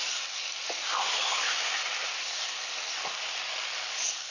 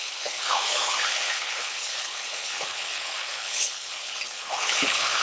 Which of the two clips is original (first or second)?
first